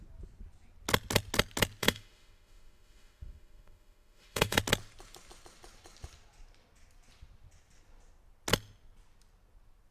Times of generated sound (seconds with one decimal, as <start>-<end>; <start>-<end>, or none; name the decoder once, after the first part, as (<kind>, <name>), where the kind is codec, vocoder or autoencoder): 1.8-4.6 (autoencoder, DAC-VAE)